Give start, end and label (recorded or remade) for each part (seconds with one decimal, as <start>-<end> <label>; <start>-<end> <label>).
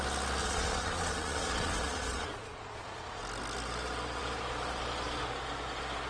0.0-0.4 recorded; 0.4-3.2 remade; 3.2-6.1 recorded